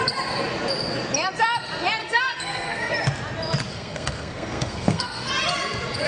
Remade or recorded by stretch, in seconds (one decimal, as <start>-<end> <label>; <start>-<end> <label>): 0.0-2.0 recorded; 2.0-2.9 remade; 2.9-3.7 recorded; 3.7-5.3 remade; 5.3-6.1 recorded